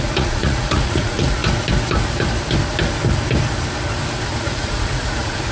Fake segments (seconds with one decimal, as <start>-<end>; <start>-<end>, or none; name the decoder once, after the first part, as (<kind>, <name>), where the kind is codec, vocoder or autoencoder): 0.0-1.4 (vocoder, Vocos); 4.4-5.5